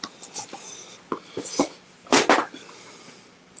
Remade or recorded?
recorded